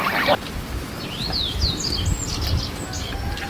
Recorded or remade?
recorded